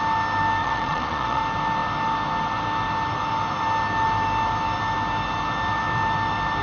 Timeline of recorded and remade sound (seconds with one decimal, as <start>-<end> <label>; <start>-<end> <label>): 0.0-0.6 recorded; 0.6-1.4 remade; 1.4-6.6 recorded